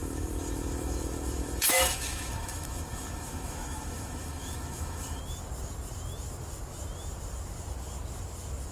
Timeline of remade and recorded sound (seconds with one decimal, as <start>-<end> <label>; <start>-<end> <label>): 0.0-5.2 remade; 5.2-8.7 recorded